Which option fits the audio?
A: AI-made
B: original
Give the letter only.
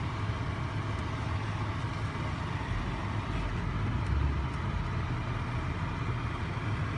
B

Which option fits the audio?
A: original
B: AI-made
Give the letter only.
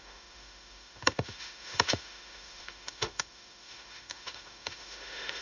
B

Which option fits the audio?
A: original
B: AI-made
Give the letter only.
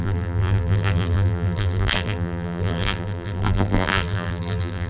B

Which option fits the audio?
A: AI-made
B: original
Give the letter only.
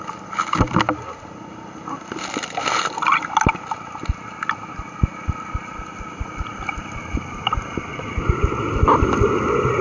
B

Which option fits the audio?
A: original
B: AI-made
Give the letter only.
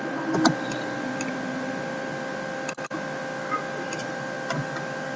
A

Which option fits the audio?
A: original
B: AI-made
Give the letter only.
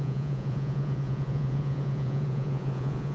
B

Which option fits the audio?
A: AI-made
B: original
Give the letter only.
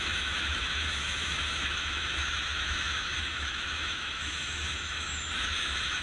A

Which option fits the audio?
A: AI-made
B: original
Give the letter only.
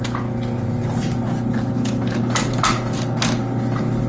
B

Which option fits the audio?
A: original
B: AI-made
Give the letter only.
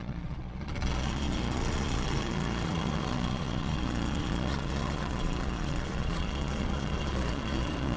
B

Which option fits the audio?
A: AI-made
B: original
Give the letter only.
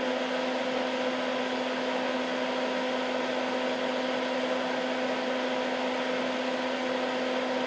B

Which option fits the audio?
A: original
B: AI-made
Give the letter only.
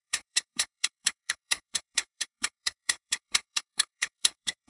B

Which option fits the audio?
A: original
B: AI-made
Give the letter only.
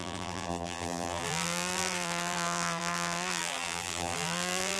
B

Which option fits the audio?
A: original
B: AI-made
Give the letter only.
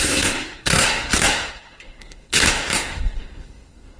B